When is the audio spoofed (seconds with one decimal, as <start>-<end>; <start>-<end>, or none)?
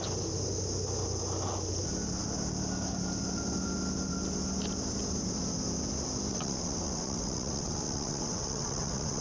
6.3-9.2